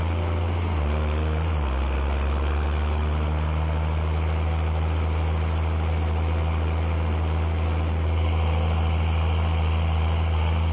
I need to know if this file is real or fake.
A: real